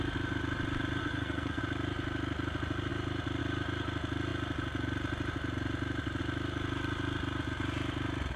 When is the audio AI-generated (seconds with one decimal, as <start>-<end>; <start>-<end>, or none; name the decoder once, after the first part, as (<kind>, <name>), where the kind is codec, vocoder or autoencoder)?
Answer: 1.0-1.6 (codec, SNAC)